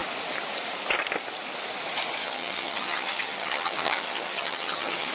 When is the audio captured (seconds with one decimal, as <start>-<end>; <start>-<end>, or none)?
0.0-2.2